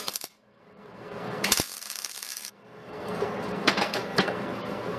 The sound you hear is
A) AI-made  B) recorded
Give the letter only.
A